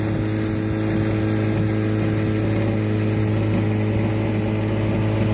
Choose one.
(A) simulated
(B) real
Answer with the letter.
B